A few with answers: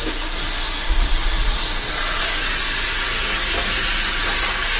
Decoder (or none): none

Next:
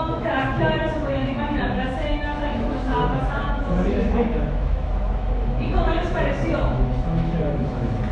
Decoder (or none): autoencoder, DAC-VAE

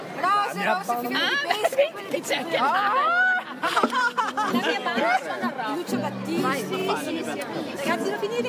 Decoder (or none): none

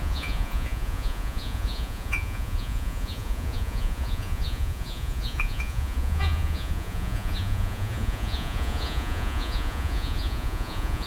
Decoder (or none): vocoder, Vocos